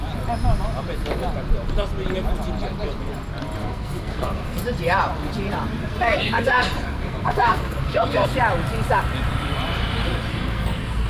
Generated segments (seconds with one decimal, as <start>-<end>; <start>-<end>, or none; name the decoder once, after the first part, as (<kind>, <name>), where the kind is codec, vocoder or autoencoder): 3.6-4.6 (codec, SNAC); 5.8-8.3; 10.3-11.1